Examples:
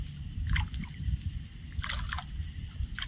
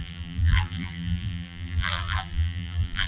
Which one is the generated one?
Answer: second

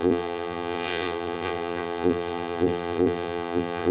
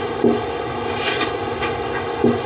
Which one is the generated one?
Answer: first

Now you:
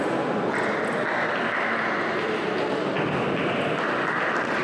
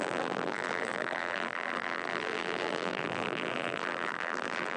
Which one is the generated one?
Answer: second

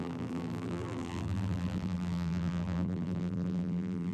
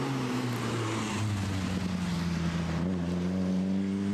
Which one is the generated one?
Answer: first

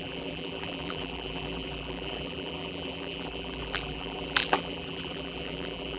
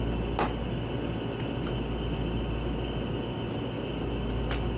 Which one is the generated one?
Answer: first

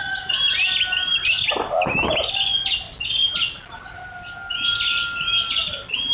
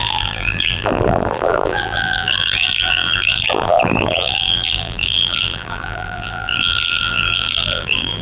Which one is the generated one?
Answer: second